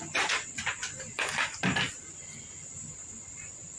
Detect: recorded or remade recorded